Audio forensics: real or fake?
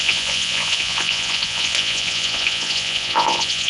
fake